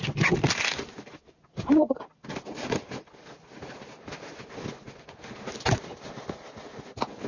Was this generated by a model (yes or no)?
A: no